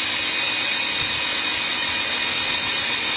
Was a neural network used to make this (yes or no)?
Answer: no